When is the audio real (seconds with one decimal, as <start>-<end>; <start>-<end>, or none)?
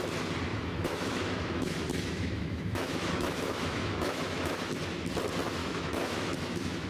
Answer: 0.0-0.5; 4.6-5.6